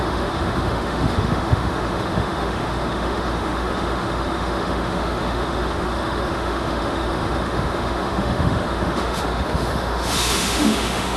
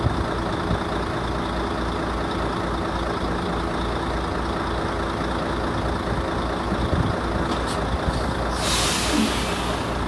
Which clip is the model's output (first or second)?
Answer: first